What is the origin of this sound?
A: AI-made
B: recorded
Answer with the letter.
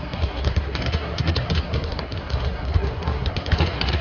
A